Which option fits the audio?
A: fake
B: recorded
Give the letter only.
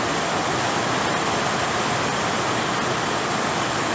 B